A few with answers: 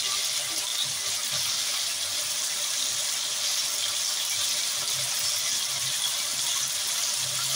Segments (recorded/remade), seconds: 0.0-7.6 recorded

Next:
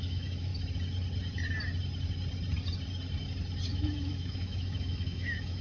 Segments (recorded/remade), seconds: 0.0-0.5 remade; 0.5-3.7 recorded; 3.7-5.6 remade